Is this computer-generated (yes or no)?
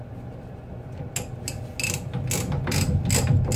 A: no